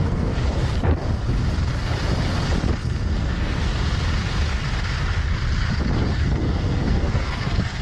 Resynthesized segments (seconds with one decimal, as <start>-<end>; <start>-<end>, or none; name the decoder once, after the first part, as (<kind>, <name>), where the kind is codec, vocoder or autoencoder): 0.0-0.4 (codec, SNAC); 2.8-3.7; 6.1-7.8